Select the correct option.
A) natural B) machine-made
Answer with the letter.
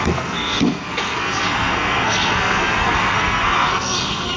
B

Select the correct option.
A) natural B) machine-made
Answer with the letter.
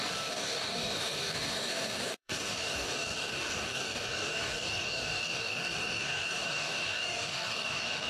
B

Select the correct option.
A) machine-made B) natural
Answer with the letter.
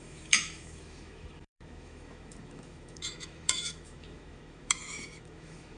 A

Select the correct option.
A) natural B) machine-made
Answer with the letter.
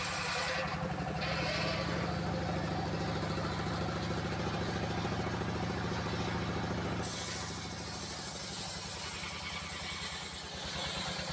A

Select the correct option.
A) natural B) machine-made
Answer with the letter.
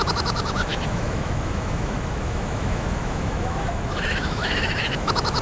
B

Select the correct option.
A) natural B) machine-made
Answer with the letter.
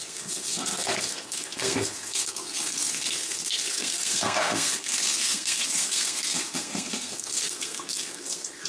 B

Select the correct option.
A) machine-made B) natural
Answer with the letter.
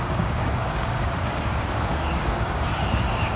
A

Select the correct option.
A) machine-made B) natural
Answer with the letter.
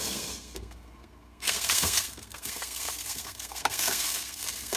A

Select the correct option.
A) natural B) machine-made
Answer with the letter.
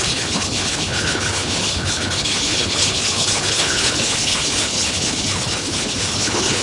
B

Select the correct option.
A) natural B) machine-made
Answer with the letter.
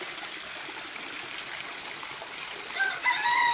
A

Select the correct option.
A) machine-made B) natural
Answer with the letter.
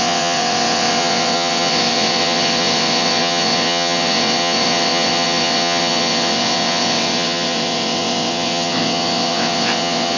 A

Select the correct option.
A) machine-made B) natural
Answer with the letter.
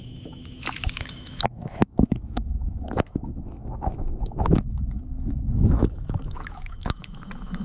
A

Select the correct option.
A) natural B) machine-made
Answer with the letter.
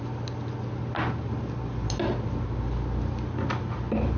A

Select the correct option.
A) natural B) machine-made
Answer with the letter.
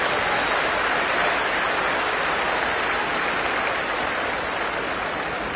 A